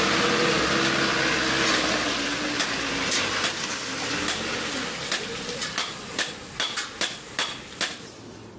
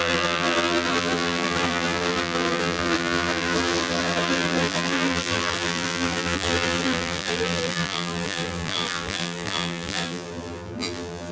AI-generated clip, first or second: second